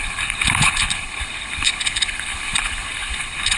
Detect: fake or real fake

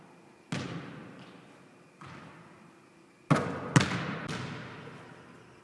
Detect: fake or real real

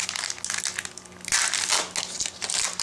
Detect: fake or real real